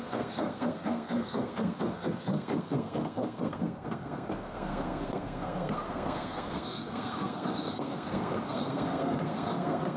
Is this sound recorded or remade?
remade